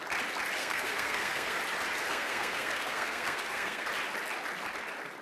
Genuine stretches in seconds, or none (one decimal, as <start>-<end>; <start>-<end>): 0.0-0.6; 1.6-2.1; 3.9-5.2